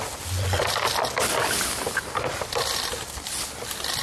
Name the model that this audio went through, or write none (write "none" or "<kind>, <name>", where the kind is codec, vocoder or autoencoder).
none